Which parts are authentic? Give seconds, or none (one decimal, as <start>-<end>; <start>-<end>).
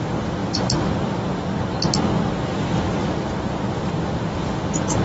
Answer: 0.0-0.4; 0.9-3.0; 4.5-5.0